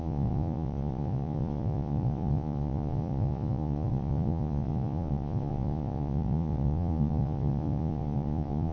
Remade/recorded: remade